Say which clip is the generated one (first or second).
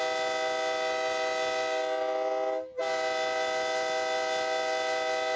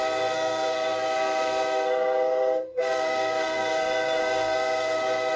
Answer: second